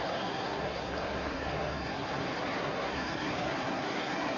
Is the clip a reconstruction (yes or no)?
yes